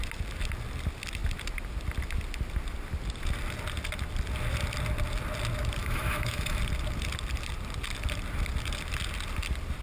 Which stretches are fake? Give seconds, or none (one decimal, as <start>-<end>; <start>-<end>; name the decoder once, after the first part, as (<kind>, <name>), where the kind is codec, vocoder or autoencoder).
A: 5.8-6.6 (autoencoder, DAC-VAE)